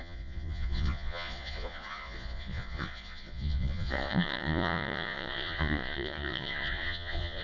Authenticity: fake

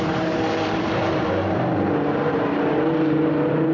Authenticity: fake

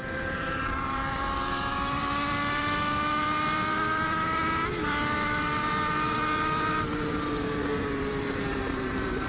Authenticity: fake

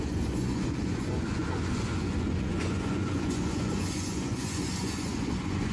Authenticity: fake